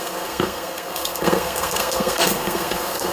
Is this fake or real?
fake